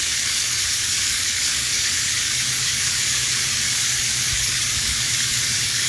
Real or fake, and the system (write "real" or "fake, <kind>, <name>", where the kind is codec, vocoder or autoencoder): fake, codec, DAC